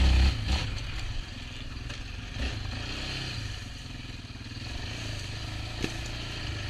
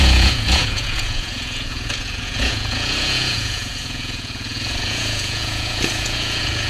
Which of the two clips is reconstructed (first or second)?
second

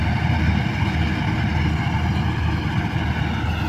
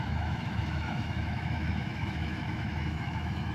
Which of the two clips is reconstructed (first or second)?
second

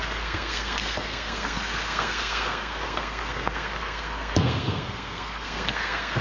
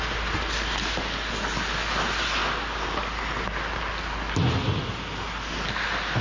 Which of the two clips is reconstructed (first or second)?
first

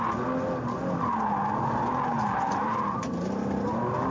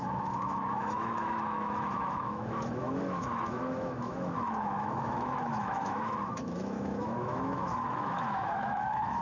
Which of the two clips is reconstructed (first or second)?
second